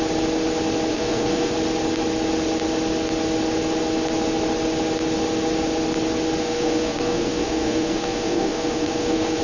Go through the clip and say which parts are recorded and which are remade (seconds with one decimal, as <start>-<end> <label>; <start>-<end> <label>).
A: 0.0-0.9 recorded; 0.9-1.5 remade; 1.5-6.4 recorded; 6.4-9.4 remade